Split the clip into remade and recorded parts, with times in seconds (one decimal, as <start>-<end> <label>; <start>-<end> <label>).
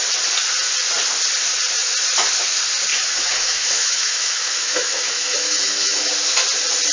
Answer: 0.0-2.9 recorded; 2.9-6.1 remade; 6.1-6.9 recorded